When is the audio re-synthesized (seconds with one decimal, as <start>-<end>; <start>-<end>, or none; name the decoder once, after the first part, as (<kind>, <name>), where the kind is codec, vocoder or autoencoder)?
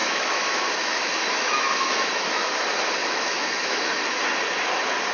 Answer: 0.0-2.5 (autoencoder, DAC-VAE); 3.0-3.9